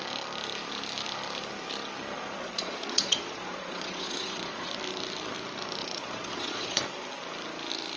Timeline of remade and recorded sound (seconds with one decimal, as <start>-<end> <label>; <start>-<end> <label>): 0.0-2.3 recorded; 2.3-4.7 remade; 4.7-5.8 recorded; 5.8-6.8 remade; 6.8-8.0 recorded